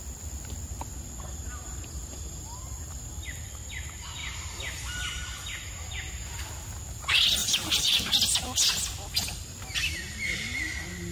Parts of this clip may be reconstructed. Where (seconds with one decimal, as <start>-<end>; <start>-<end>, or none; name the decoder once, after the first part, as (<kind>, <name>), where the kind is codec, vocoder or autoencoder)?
1.3-3.1 (vocoder, BigVGAN v2); 4.2-6.5; 7.4-8.1